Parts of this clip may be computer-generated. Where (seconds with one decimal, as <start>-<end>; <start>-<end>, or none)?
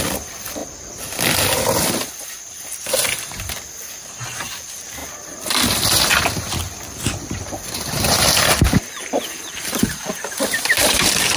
0.0-11.4